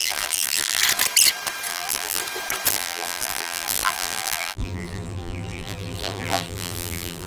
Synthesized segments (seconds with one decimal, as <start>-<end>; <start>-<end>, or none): 0.0-0.8; 1.7-2.2; 2.7-7.3

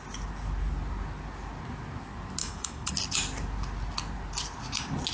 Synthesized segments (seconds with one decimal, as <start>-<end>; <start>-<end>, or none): 2.4-2.9

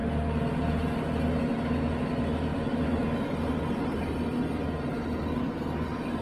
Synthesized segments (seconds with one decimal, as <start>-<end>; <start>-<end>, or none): 2.5-5.5

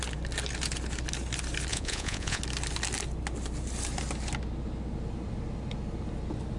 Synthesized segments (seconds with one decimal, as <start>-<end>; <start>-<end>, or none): 1.7-2.4

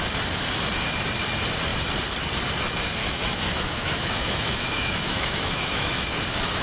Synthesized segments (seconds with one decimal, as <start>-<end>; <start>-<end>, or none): 3.0-5.9

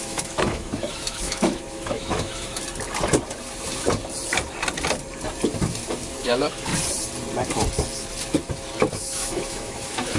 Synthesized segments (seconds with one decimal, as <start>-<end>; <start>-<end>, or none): 0.0-2.6; 6.2-6.7; 8.9-10.2

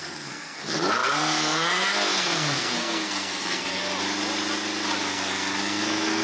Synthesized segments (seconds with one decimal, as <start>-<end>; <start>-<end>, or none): 0.0-3.8; 5.0-6.2

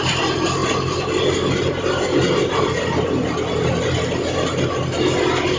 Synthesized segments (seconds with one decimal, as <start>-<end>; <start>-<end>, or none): none